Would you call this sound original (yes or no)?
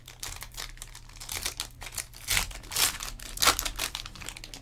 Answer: yes